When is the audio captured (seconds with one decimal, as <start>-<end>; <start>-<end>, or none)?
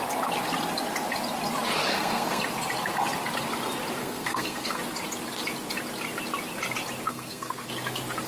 0.0-1.9; 2.4-4.0; 4.8-7.1; 7.7-8.3